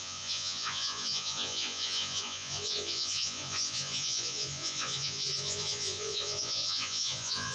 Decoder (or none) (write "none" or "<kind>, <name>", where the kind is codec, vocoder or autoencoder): vocoder, Vocos